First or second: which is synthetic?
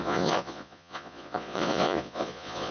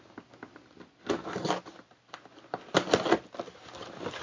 first